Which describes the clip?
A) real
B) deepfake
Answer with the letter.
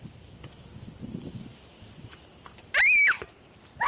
A